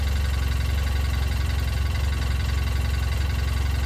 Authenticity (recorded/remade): recorded